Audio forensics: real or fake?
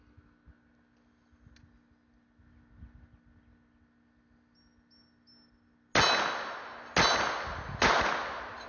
real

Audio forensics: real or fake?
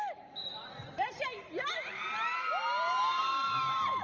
fake